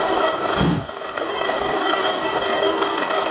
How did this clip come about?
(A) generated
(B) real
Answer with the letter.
A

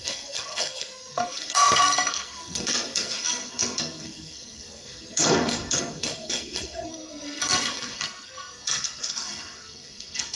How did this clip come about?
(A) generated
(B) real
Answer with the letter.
A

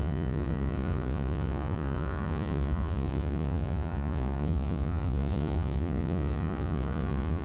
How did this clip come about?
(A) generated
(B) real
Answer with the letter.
A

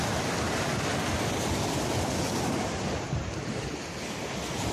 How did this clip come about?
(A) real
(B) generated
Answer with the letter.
A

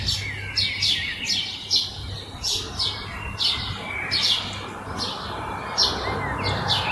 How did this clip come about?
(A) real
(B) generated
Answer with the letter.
A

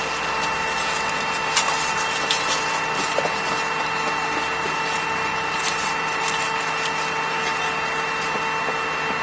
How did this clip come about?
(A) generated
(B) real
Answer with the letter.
B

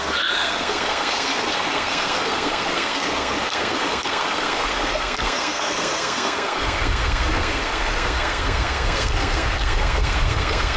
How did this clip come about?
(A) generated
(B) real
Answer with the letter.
A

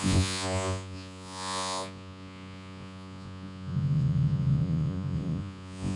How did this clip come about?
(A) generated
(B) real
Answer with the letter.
A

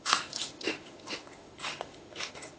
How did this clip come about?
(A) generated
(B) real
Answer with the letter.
A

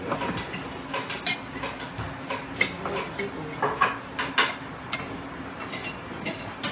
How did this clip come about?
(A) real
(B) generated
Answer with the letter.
A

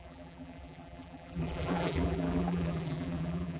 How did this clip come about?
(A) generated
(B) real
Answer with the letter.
A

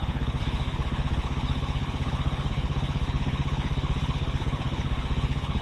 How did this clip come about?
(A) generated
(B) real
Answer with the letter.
A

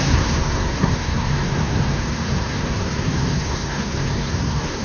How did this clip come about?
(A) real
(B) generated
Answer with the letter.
B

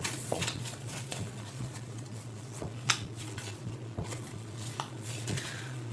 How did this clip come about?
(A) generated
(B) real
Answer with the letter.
A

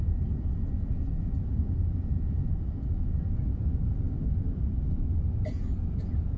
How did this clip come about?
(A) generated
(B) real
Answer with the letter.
A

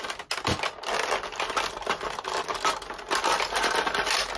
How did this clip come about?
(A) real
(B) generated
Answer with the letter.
A